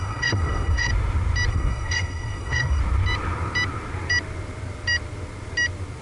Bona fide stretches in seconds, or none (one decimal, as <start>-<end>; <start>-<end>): 0.9-1.5; 2.8-6.0

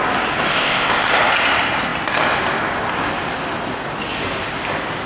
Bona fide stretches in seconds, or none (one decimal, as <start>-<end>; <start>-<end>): 0.0-0.5; 1.1-5.1

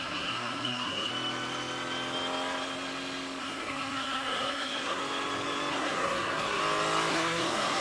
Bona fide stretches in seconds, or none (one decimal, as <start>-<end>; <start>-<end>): 1.1-3.4; 5.0-5.7; 6.6-7.1

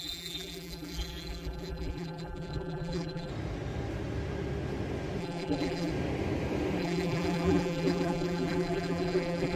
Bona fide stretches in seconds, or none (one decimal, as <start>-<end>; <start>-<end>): 3.3-5.2; 5.9-6.8

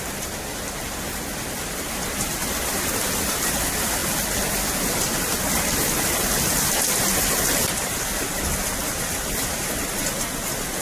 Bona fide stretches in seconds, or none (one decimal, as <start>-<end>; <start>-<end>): 0.0-10.8

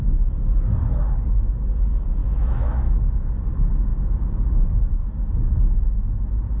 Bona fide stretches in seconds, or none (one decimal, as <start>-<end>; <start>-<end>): 0.0-2.2; 3.3-6.6

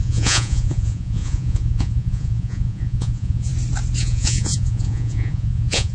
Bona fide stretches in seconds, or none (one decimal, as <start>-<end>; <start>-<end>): 3.5-4.0